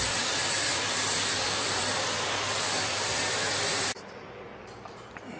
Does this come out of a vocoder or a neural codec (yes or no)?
yes